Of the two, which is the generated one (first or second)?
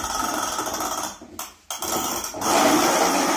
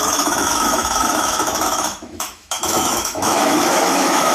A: second